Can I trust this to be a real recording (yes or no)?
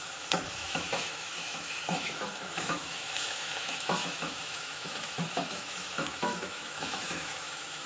no